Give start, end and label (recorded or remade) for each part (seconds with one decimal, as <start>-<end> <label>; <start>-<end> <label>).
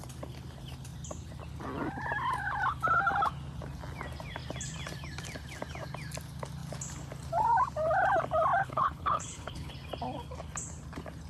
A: 0.0-8.6 recorded; 8.6-9.7 remade; 9.7-11.3 recorded